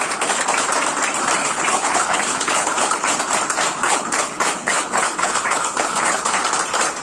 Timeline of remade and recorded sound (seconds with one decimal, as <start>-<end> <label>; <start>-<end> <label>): 0.0-1.4 recorded; 1.4-3.2 remade; 3.2-3.8 recorded; 3.8-6.5 remade; 6.5-7.0 recorded